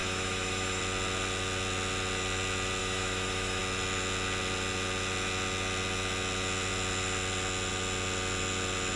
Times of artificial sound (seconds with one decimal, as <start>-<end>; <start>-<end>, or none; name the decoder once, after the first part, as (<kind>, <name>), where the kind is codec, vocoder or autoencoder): 0.0-0.8 (autoencoder, DAC-VAE); 2.8-3.6

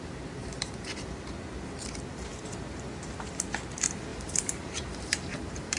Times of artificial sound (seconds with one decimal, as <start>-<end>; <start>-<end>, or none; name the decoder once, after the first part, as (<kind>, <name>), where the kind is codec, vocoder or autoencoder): 0.4-1.2 (vocoder, BigVGAN v2); 4.1-5.8

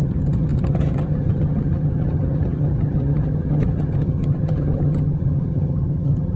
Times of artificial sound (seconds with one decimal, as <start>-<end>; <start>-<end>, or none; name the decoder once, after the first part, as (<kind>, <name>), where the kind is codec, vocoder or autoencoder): 0.0-6.4 (vocoder, HiFi-GAN)

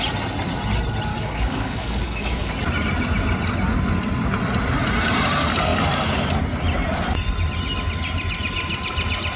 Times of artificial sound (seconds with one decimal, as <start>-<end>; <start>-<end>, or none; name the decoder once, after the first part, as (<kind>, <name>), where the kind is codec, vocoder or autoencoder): 1.1-2.5 (codec, DAC)

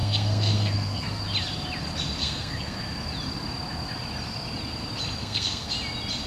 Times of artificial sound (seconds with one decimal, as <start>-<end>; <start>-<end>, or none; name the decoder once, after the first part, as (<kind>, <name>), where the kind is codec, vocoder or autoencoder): 0.0-1.2 (codec, SNAC); 2.2-2.8; 5.2-5.7

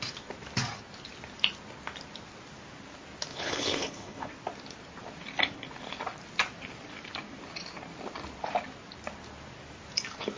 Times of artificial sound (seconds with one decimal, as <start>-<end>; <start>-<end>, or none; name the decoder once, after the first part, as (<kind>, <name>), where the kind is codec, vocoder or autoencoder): 3.3-4.3 (codec, HILCodec)